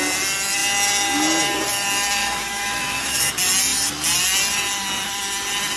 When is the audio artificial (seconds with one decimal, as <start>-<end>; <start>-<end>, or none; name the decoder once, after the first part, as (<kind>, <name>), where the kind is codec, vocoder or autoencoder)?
2.2-3.3 (autoencoder, DAC-VAE)